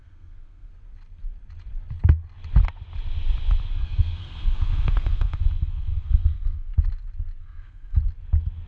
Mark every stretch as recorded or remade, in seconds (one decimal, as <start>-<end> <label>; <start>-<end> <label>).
0.0-0.7 remade; 0.7-3.7 recorded; 3.7-6.7 remade; 6.7-7.4 recorded; 7.4-8.0 remade; 8.0-8.7 recorded